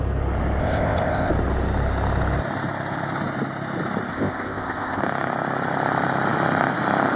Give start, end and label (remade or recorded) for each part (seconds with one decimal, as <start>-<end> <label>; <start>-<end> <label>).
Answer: 0.0-0.6 recorded; 0.6-1.3 remade; 1.3-4.1 recorded; 4.1-5.0 remade; 5.0-7.2 recorded